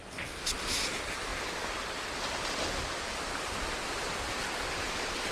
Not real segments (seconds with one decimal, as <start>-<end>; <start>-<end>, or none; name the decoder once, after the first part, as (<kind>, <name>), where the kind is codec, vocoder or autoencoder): none